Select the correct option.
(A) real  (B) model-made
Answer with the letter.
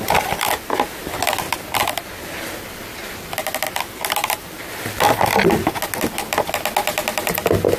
A